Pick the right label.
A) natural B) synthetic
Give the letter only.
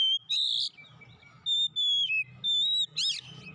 A